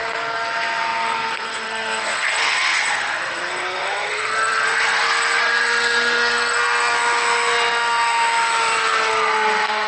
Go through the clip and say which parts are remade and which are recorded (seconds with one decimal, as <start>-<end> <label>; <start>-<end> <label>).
0.0-7.0 remade; 7.0-9.1 recorded; 9.1-9.9 remade